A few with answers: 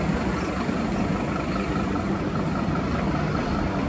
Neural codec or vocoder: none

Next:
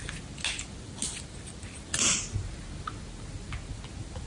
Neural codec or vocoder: none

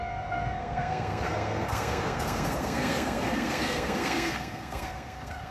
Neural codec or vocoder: codec, SNAC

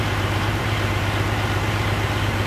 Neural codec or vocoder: vocoder, BigVGAN v2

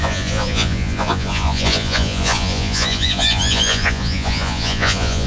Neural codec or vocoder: vocoder, Vocos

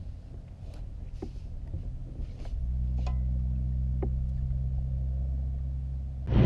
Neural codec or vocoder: none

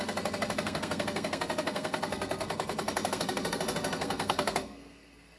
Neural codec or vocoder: codec, SNAC